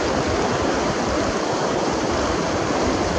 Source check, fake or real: real